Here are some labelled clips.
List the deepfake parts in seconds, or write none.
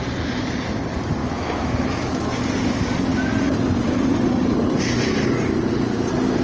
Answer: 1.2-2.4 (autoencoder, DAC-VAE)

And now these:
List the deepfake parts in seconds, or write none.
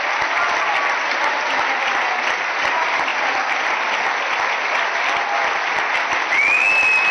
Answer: none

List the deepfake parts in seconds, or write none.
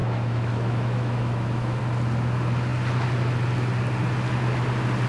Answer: 0.0-1.8 (autoencoder, DAC-VAE)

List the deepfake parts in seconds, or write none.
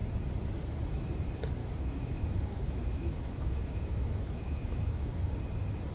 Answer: 1.6-5.1 (autoencoder, DAC-VAE)